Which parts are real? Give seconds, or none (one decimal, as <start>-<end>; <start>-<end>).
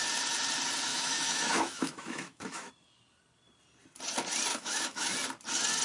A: 0.0-0.9; 2.7-4.5; 5.1-5.8